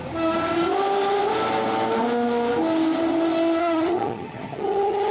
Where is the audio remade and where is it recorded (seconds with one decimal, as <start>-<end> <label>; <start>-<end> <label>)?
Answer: 0.0-3.6 recorded; 3.6-5.1 remade